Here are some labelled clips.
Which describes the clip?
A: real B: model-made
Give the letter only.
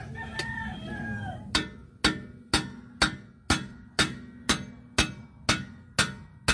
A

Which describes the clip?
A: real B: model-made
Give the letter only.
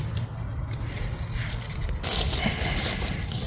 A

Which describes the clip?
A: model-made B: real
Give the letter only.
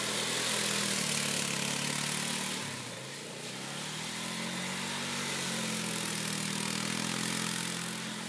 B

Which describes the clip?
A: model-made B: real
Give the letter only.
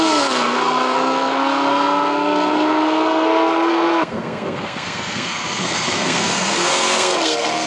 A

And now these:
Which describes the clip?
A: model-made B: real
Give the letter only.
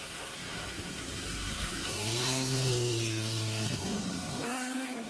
A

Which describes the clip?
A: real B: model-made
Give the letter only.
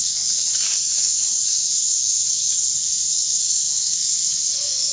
B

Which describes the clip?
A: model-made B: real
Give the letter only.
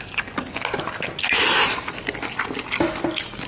B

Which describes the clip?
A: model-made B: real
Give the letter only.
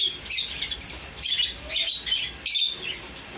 B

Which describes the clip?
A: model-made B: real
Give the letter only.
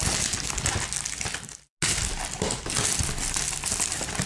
B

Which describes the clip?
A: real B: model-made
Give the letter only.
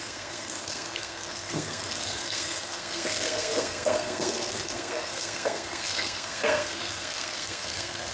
B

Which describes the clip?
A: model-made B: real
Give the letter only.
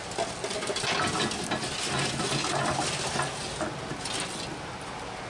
B